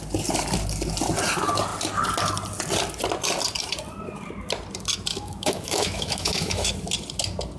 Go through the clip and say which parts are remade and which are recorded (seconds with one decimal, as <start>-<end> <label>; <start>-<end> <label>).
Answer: 0.0-5.1 recorded; 5.1-6.7 remade; 6.7-7.6 recorded